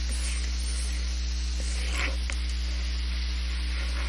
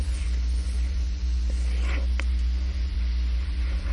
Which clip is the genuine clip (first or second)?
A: first